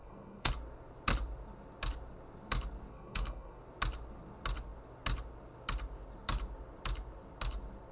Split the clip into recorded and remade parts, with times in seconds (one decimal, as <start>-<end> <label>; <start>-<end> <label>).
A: 0.0-0.5 remade; 0.5-2.9 recorded; 2.9-3.6 remade; 3.6-7.9 recorded